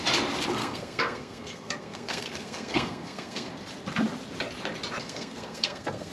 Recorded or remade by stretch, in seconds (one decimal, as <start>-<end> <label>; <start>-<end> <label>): 0.0-0.6 recorded; 0.6-3.5 remade; 3.5-5.0 recorded; 5.0-6.1 remade